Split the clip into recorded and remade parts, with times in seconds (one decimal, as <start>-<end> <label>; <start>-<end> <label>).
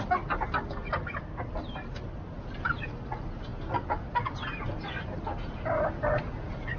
0.0-6.8 recorded